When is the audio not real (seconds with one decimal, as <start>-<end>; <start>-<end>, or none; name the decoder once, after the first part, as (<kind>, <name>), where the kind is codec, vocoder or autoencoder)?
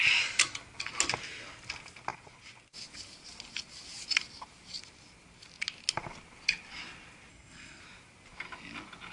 7.3-7.8 (codec, SNAC)